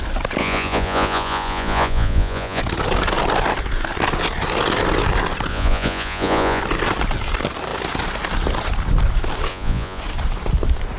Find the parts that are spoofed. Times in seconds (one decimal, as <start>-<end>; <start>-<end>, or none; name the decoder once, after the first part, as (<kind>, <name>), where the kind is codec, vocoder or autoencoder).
0.4-2.6 (vocoder, Vocos); 5.5-6.6; 9.5-10.0

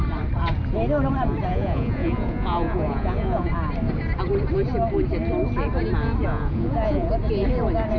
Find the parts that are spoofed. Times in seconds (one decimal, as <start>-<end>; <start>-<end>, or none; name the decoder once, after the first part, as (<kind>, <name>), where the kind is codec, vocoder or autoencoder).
1.5-3.5 (vocoder, Vocos); 6.3-7.1